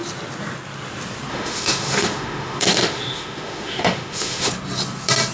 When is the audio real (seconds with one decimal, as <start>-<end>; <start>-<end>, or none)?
0.0-1.3; 4.5-5.3